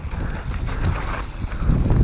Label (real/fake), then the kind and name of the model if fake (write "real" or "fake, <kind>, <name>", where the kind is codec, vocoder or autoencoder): real